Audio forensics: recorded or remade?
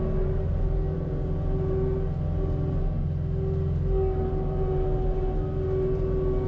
recorded